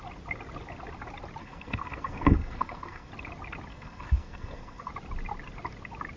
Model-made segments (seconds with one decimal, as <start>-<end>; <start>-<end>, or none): 1.4-3.1; 3.7-4.9